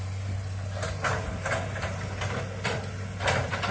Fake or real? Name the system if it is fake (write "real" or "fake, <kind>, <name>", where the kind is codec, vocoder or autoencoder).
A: real